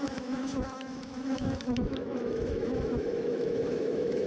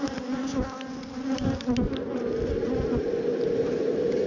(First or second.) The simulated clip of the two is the first